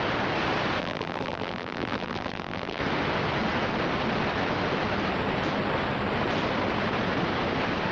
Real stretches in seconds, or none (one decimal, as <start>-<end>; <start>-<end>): 0.0-0.8; 2.8-7.9